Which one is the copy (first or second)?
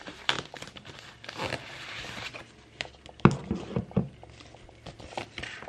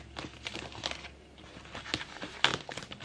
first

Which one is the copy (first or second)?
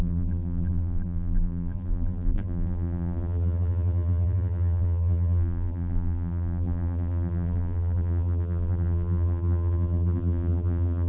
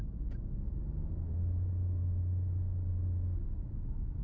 first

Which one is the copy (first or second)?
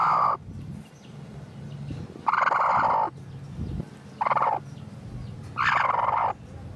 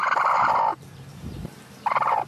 second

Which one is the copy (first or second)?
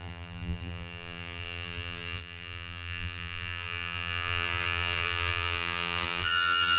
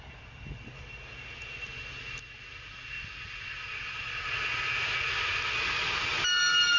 first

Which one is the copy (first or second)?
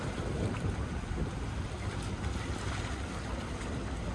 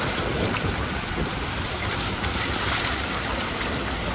second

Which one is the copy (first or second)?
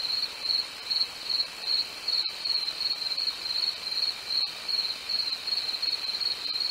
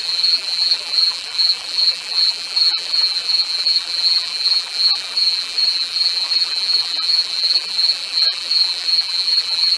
second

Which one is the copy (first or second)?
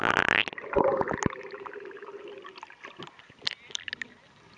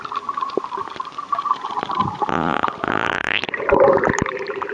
second